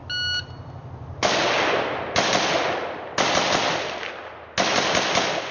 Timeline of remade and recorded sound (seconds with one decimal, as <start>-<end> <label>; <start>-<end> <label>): 0.0-5.5 recorded